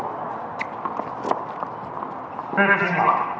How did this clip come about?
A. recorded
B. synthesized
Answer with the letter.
A